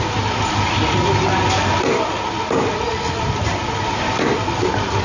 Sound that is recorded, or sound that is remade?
recorded